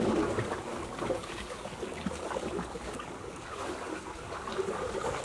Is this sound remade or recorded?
remade